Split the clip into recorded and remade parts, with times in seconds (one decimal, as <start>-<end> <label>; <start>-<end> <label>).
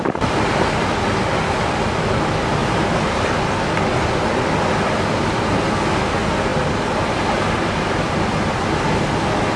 0.0-2.6 recorded; 2.6-3.3 remade; 3.3-6.5 recorded; 6.5-8.0 remade; 8.0-9.6 recorded